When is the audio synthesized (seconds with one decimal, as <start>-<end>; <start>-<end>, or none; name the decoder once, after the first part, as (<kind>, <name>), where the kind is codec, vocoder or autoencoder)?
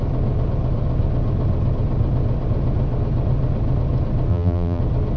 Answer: 4.3-4.8 (vocoder, BigVGAN v2)